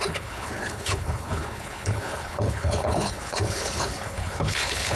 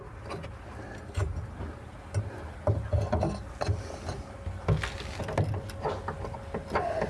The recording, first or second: second